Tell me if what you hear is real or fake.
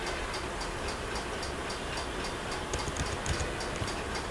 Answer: real